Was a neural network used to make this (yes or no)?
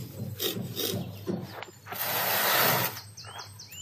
no